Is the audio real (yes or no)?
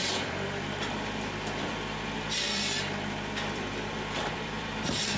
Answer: no